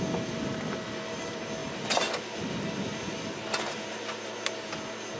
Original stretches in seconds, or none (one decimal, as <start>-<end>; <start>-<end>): 0.0-5.2